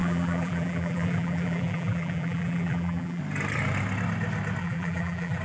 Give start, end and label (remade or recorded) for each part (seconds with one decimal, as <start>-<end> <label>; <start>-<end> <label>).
0.0-3.2 remade; 3.2-4.6 recorded; 4.6-5.4 remade